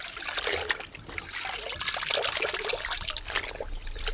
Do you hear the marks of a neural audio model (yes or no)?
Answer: no